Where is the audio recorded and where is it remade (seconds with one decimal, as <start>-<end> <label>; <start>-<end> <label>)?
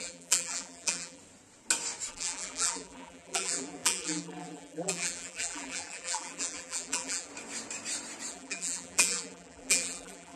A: 0.0-1.2 remade; 1.2-2.1 recorded; 2.1-7.3 remade; 7.3-8.3 recorded; 8.3-10.4 remade